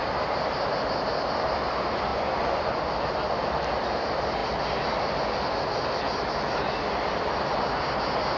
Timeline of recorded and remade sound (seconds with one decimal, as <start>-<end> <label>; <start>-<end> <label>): 0.0-2.1 recorded; 2.1-2.8 remade; 2.8-8.4 recorded